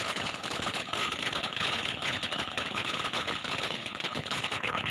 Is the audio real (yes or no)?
no